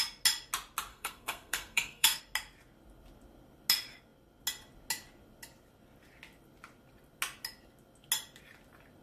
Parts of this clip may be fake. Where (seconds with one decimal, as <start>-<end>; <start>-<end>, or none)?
0.9-2.2